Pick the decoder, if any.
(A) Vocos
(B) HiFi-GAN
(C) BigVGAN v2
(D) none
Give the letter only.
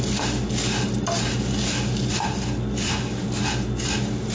D